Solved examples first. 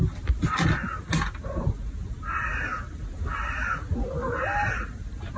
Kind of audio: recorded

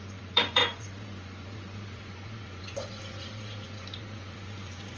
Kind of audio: remade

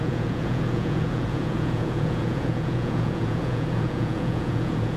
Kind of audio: remade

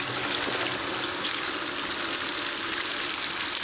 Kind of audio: recorded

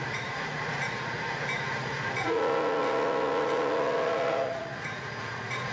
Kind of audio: remade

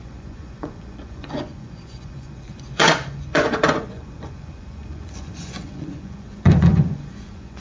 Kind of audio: remade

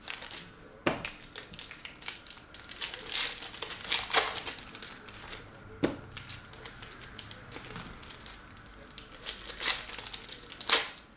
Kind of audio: recorded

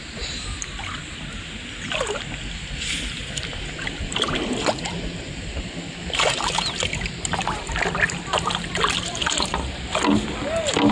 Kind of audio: recorded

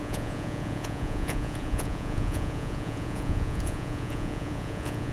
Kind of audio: remade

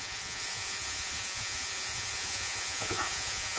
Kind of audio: remade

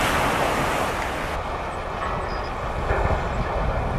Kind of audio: recorded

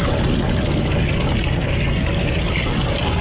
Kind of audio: recorded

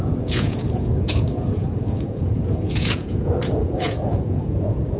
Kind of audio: remade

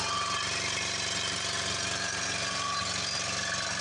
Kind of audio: recorded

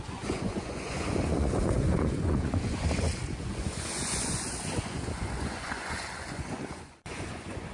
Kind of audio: remade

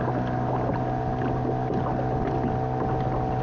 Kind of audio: recorded